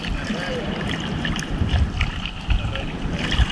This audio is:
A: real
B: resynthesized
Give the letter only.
A